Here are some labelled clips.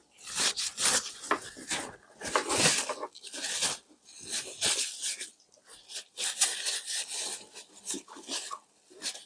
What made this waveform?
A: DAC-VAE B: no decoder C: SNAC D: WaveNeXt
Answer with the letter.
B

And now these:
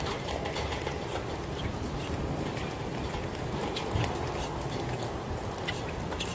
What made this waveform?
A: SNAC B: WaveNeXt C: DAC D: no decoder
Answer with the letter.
D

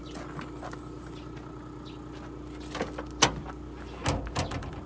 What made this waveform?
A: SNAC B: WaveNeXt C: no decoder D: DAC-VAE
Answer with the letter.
C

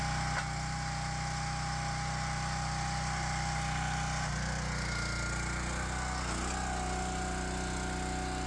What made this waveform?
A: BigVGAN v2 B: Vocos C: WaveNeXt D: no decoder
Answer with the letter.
D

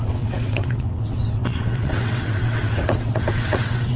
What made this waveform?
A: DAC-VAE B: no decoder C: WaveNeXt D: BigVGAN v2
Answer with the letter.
C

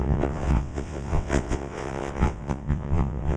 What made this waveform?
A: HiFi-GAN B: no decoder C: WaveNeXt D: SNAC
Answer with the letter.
C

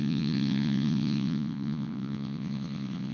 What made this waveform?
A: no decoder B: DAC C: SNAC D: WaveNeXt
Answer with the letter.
D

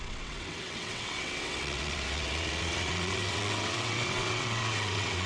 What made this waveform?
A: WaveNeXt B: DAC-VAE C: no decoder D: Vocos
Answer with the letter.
A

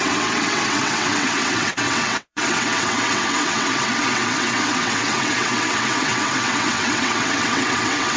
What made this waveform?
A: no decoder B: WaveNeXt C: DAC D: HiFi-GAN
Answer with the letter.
B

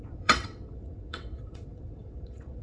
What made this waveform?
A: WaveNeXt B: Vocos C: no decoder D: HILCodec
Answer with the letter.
A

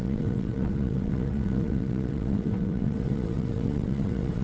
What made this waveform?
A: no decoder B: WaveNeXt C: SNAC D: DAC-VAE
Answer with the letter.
B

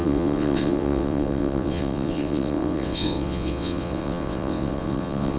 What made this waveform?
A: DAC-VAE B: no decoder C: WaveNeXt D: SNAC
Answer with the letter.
C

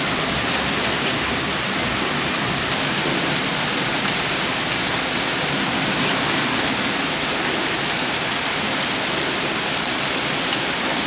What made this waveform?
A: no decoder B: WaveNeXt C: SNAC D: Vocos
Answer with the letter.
A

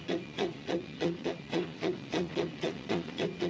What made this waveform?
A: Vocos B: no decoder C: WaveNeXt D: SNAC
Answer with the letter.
C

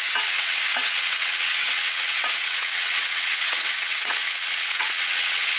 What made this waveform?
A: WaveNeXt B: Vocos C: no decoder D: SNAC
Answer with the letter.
A